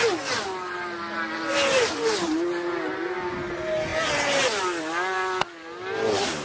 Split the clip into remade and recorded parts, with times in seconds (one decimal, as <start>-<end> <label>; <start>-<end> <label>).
0.0-6.4 recorded